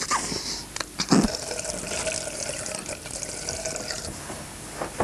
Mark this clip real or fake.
real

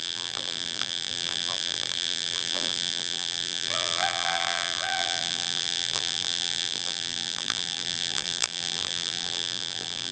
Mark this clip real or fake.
fake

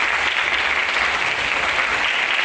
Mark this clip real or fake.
real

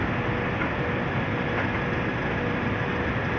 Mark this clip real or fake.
real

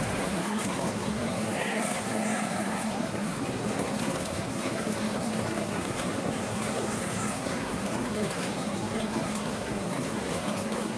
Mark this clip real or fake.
fake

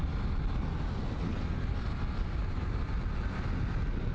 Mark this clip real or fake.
real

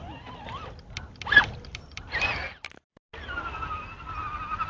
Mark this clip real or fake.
real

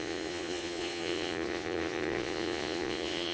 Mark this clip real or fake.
fake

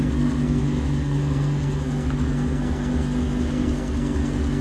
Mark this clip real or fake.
fake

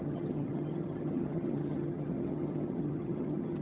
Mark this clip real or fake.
fake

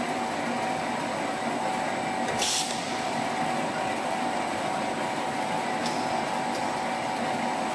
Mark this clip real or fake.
real